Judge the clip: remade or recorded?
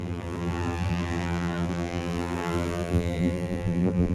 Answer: remade